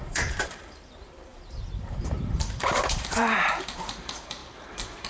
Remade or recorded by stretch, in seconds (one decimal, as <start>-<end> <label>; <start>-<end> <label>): 0.0-4.4 remade; 4.4-5.1 recorded